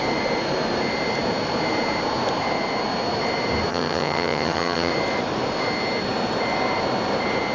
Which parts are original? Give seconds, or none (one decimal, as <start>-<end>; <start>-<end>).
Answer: 0.0-3.7; 4.9-7.5